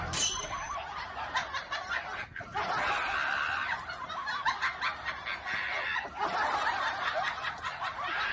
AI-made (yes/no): no